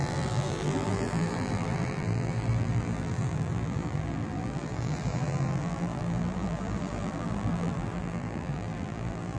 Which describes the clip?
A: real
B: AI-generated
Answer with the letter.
B